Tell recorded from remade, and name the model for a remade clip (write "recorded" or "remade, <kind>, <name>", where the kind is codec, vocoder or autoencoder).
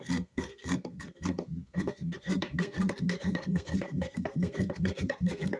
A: remade, codec, SNAC